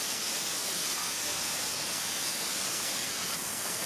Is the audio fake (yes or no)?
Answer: yes